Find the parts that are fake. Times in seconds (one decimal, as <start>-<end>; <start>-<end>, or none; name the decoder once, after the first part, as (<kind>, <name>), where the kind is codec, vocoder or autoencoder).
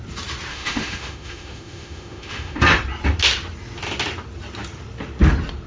0.5-2.6 (autoencoder, DAC-VAE)